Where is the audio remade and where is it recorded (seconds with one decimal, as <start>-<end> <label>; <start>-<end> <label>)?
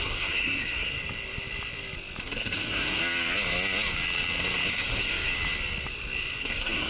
0.0-0.9 remade; 0.9-2.2 recorded; 2.2-3.0 remade; 3.0-4.7 recorded; 4.7-5.3 remade; 5.3-6.4 recorded; 6.4-6.9 remade